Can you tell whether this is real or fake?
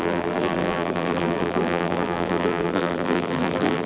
fake